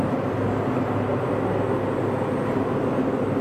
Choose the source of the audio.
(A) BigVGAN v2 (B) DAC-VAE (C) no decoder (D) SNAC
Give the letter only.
C